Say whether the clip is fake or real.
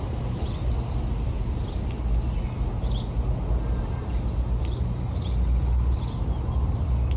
real